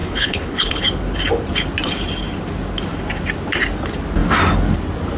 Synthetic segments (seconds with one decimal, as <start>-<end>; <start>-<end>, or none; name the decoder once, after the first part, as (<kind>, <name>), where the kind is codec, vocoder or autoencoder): 0.0-0.8 (codec, HILCodec)